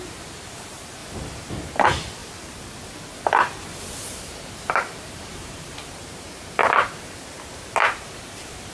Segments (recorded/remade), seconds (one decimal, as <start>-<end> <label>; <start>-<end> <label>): 0.0-1.0 remade; 1.0-1.5 recorded; 1.5-2.2 remade; 2.2-4.2 recorded; 4.2-8.7 remade